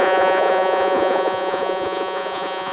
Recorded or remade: remade